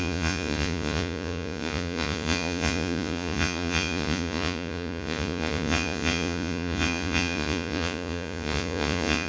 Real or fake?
fake